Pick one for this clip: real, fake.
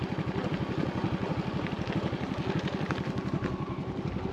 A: real